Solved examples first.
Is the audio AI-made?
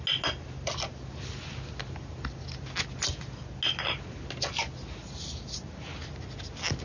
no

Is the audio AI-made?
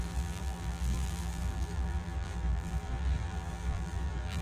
yes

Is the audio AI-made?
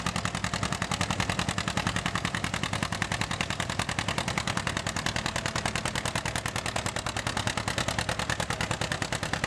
no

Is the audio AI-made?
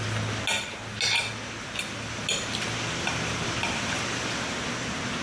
no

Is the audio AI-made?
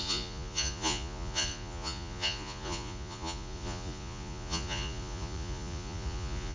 yes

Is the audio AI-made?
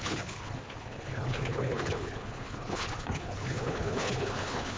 yes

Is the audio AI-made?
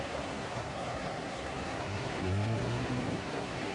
yes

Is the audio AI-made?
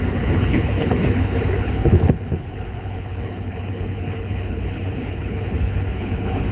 yes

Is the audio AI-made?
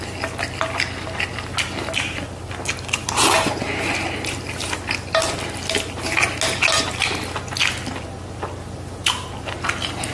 no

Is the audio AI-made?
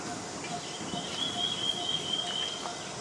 no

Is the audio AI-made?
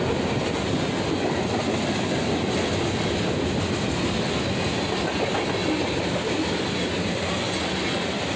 no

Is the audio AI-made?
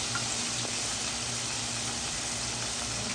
no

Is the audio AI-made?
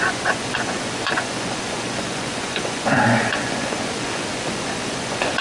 yes